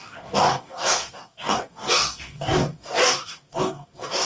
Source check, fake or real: fake